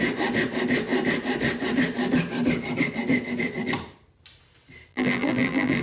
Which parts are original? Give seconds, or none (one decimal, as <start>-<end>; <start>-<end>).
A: 0.0-4.9